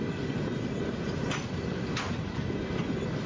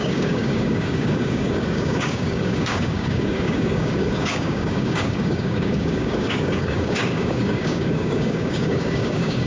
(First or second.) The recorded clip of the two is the first